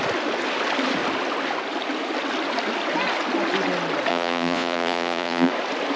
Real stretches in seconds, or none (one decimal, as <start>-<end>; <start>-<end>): 0.0-4.1; 5.5-6.0